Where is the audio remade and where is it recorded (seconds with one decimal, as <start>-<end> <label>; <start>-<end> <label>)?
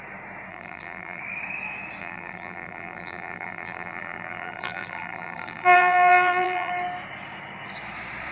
0.0-0.5 recorded; 0.5-1.2 remade; 1.2-2.0 recorded; 2.0-6.7 remade; 6.7-8.3 recorded